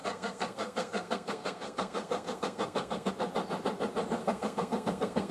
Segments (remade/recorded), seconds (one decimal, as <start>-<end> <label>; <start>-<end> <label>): 0.0-3.1 remade; 3.1-4.2 recorded; 4.2-5.3 remade